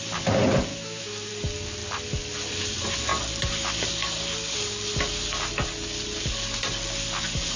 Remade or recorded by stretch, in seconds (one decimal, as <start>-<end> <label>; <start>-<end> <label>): 0.0-0.7 recorded; 0.7-1.3 remade; 1.3-7.6 recorded